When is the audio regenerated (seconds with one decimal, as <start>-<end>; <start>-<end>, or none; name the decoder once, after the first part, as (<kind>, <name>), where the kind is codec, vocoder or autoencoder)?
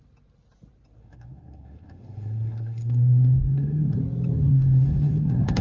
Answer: 1.0-4.0 (codec, SNAC); 4.5-5.6